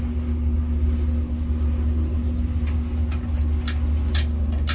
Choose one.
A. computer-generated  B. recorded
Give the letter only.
B